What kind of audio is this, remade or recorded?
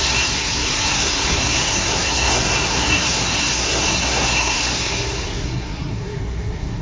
remade